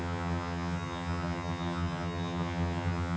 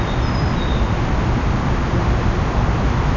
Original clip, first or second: second